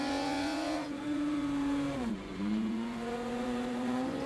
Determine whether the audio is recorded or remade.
remade